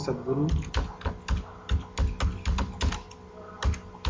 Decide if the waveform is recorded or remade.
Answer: recorded